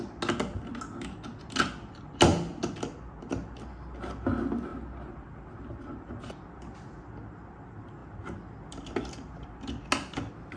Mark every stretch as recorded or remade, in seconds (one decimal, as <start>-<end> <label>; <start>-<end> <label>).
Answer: 0.0-10.6 recorded

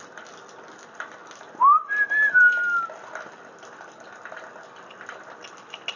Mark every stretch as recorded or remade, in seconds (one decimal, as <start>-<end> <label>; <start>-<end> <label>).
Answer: 0.0-6.0 recorded

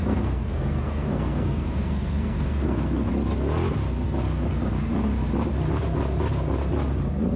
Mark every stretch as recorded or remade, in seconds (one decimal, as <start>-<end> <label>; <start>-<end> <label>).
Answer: 0.0-3.1 remade; 3.1-7.4 recorded